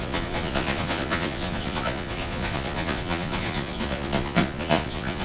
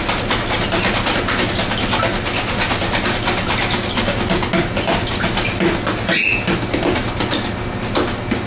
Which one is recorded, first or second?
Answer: second